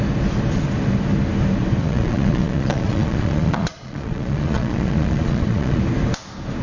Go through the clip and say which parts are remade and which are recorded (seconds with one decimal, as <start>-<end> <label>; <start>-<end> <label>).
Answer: 0.0-1.8 recorded; 1.8-5.8 remade; 5.8-6.6 recorded